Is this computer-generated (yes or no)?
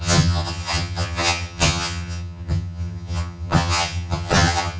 yes